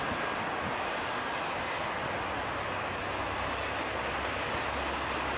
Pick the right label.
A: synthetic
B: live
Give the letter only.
B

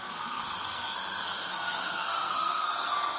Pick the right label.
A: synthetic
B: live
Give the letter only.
A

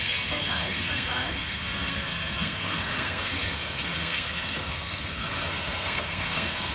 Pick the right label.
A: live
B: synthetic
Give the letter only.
B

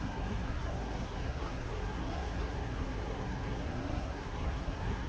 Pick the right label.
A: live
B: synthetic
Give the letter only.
B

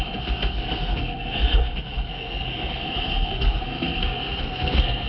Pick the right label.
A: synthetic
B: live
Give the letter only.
A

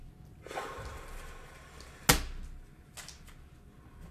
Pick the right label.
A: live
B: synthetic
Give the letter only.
A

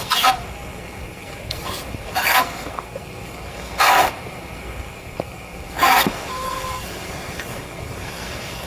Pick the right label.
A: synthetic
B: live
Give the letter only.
A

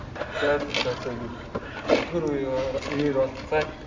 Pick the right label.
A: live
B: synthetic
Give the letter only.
A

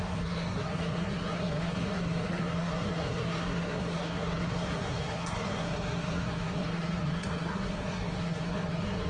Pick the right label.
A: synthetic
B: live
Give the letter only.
A